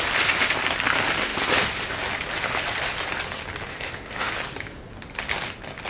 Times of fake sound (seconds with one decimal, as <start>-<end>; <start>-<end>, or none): 3.7-4.3